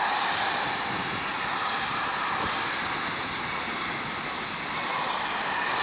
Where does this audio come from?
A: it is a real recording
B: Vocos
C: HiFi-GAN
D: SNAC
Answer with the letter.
A